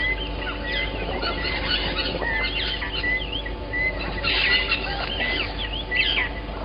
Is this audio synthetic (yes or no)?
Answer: no